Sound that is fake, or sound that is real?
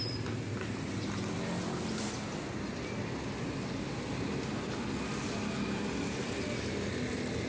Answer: real